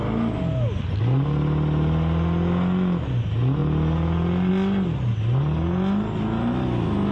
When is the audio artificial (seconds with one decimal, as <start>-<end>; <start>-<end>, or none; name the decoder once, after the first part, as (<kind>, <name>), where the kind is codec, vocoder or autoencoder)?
none